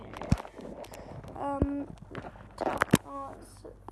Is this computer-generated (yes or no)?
no